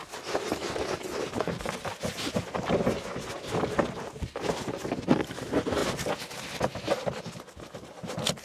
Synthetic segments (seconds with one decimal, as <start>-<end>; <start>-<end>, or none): none